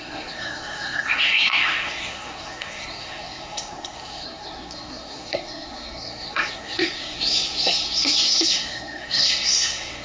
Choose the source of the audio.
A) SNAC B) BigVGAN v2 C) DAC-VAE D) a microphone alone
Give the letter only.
A